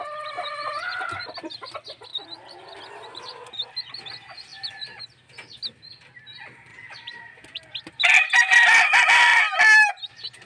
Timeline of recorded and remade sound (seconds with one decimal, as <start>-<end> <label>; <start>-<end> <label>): 0.0-2.1 recorded; 2.1-2.8 remade; 2.8-4.5 recorded; 4.5-5.0 remade; 5.0-6.7 recorded; 6.7-8.6 remade; 8.6-10.5 recorded